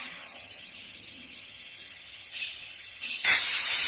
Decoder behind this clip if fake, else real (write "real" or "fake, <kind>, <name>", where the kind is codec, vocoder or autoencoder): fake, vocoder, HiFi-GAN